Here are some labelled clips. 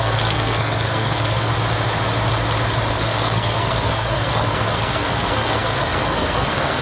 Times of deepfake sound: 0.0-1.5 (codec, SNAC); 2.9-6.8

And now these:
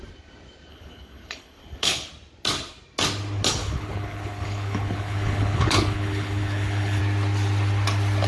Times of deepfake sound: 0.7-2.1 (codec, HILCodec); 3.6-7.0

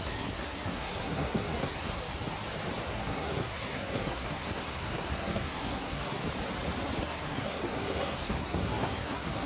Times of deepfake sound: 0.0-2.0 (codec, SNAC); 2.9-6.2; 7.0-9.5

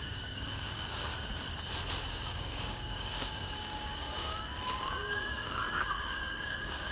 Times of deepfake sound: 0.0-1.1 (codec, DAC); 2.1-6.9

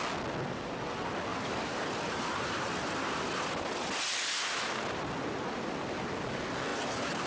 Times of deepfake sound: 1.3-5.1 (vocoder, BigVGAN v2); 6.7-7.3

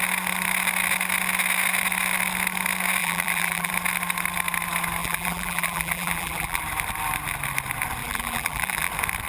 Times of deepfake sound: 3.0-3.7 (vocoder, BigVGAN v2); 5.0-6.6; 8.0-8.9